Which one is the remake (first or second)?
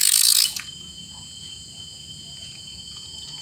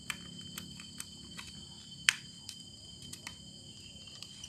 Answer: first